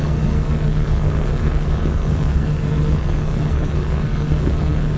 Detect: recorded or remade remade